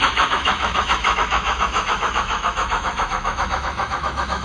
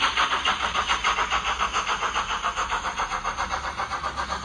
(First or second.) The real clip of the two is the second